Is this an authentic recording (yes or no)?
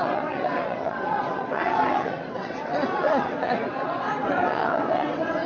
no